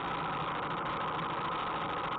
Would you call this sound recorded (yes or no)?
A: yes